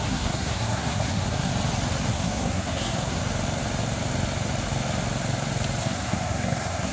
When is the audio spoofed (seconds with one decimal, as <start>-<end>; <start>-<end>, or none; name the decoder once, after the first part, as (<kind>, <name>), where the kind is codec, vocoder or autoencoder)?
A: 0.0-1.5 (codec, SNAC); 2.1-3.2; 5.8-6.9